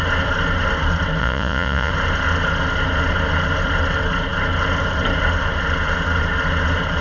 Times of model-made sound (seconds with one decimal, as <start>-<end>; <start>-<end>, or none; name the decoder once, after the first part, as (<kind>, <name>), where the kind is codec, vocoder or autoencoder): 1.2-1.9 (vocoder, Vocos)